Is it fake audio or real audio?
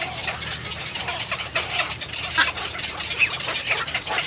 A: real